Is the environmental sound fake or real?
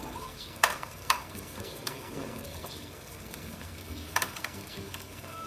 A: fake